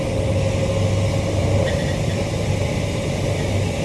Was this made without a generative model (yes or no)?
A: yes